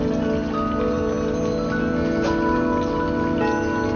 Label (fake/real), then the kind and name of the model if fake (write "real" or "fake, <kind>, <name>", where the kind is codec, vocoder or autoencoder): real